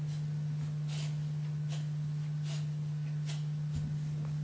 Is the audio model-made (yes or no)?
no